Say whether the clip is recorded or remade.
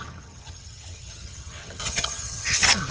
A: remade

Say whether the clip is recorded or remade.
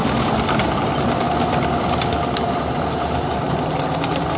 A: recorded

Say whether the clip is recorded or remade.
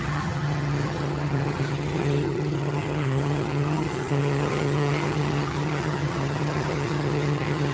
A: remade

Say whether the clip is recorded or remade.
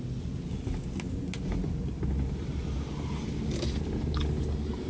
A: recorded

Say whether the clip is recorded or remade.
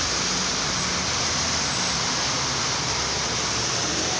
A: recorded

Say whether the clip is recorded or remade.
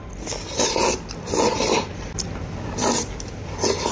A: recorded